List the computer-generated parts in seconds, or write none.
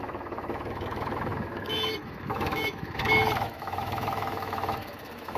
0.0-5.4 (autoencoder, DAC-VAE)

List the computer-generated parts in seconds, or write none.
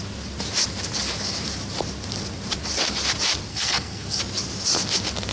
3.5-4.2 (codec, SNAC)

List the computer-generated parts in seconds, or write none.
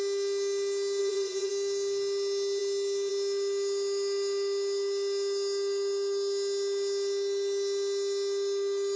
1.0-1.5 (vocoder, Vocos)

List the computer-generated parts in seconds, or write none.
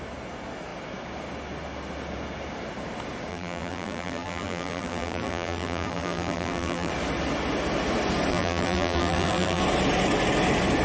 3.3-6.9 (vocoder, BigVGAN v2); 8.3-9.6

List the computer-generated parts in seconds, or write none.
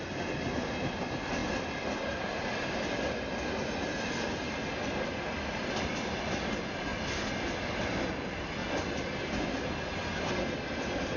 none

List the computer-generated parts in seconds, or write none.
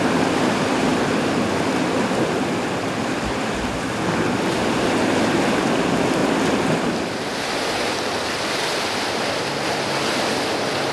none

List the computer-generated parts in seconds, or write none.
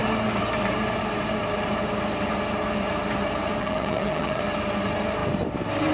3.6-4.4 (vocoder, HiFi-GAN)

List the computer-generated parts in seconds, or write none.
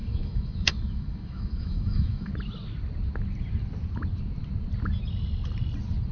0.0-2.3 (autoencoder, DAC-VAE)